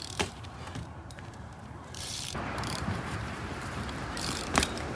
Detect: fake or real fake